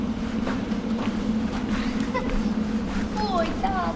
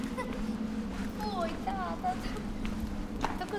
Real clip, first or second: second